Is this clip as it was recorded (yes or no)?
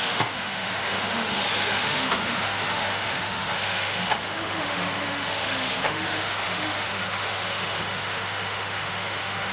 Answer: no